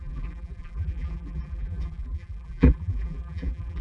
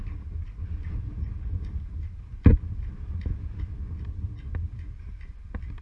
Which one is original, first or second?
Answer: second